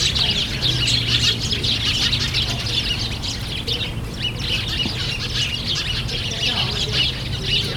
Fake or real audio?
real